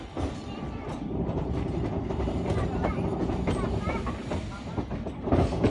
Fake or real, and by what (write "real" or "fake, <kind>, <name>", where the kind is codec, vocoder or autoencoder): real